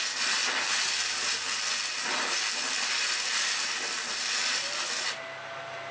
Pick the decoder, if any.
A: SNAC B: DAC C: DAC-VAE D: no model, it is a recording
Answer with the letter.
D